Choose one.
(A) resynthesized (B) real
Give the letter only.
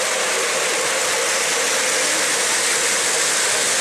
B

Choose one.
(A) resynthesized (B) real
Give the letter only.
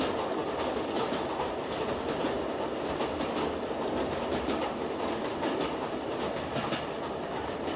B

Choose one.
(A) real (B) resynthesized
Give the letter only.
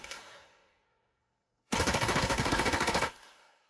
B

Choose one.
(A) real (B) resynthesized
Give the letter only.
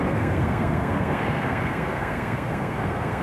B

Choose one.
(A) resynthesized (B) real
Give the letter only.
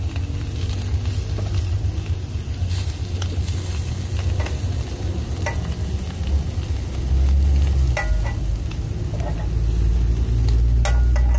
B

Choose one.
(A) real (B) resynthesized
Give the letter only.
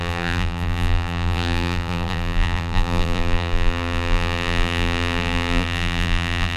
B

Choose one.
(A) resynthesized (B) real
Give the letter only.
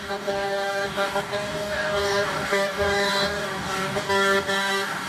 A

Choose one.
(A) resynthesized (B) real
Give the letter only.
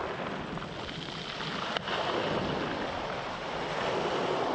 B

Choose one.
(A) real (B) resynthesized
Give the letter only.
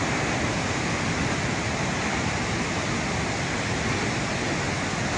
A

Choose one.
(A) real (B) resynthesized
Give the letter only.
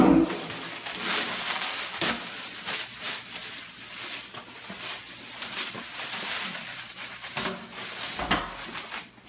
A